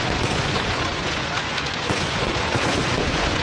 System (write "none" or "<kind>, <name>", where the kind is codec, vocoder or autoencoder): vocoder, Vocos